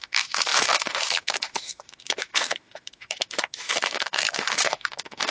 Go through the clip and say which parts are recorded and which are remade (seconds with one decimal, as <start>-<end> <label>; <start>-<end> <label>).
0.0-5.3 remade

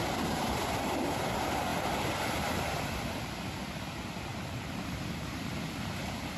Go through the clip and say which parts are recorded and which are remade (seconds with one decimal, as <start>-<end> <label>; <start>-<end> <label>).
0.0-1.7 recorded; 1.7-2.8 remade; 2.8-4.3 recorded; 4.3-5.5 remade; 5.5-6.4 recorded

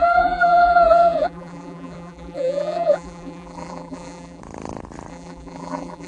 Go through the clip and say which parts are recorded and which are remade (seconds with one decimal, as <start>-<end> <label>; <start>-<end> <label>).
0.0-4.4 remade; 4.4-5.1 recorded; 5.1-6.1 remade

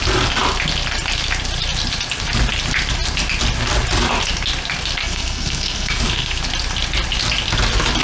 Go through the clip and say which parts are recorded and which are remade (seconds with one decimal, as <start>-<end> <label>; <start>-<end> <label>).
0.0-5.0 recorded; 5.0-6.4 remade; 6.4-8.0 recorded

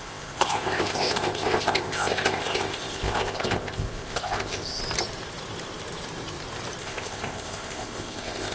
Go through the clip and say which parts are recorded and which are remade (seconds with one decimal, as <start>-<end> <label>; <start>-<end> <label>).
0.0-4.8 remade; 4.8-6.8 recorded; 6.8-8.5 remade

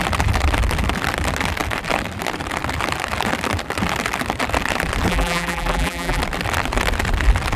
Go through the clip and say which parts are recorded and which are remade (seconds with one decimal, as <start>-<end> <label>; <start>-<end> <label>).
0.0-5.1 recorded; 5.1-6.2 remade; 6.2-7.6 recorded

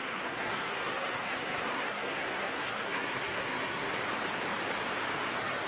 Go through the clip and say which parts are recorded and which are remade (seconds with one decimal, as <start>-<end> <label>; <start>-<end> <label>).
0.0-3.9 remade; 3.9-5.3 recorded; 5.3-5.7 remade